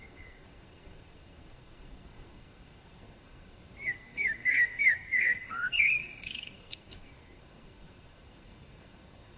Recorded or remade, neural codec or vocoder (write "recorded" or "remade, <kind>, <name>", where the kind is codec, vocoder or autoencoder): remade, codec, SNAC